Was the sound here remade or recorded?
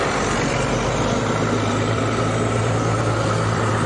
remade